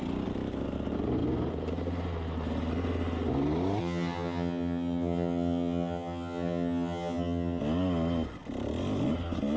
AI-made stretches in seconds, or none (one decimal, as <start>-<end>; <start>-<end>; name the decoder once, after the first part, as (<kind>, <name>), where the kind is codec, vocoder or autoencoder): 3.8-7.6 (vocoder, HiFi-GAN)